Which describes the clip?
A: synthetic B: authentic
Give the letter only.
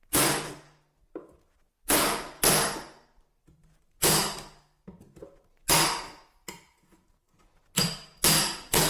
B